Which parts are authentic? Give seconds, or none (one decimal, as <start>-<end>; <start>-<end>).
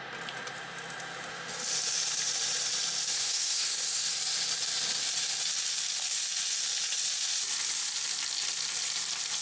0.0-3.1; 4.1-9.4